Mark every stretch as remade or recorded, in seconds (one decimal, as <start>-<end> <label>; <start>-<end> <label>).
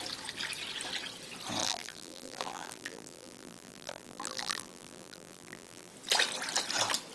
0.0-1.6 recorded; 1.6-5.9 remade; 5.9-7.1 recorded